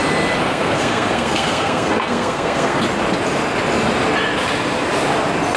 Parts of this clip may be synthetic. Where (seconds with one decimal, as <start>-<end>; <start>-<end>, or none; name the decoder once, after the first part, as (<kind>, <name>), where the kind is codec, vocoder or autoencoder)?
0.4-2.8 (codec, SNAC)